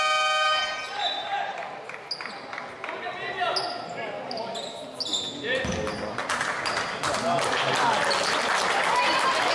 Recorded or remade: recorded